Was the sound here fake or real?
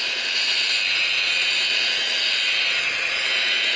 real